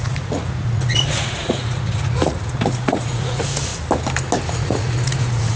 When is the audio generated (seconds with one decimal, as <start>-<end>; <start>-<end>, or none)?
0.0-3.7; 4.5-5.6